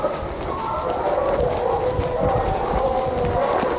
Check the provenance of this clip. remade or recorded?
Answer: recorded